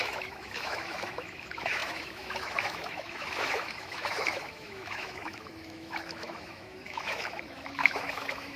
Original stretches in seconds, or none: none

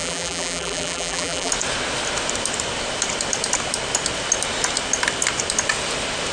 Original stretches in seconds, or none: 1.5-6.3

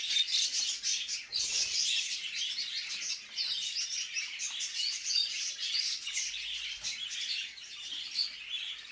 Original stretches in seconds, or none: 0.0-0.9; 2.4-5.6; 8.1-8.9

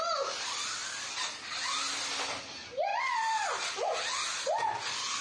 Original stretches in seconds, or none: 0.0-5.2

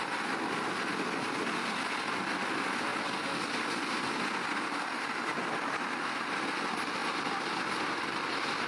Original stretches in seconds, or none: 0.0-8.7